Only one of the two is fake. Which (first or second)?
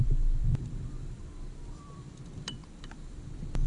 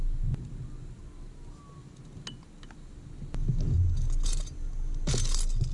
first